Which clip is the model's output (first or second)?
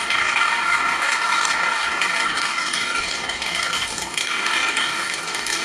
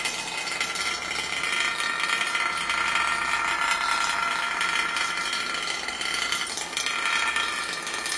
first